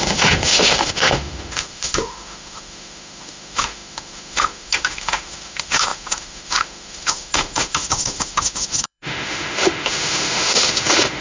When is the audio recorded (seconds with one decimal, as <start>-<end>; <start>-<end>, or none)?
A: none